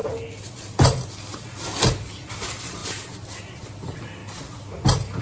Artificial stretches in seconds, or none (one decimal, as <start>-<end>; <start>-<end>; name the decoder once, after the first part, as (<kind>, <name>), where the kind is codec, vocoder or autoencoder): none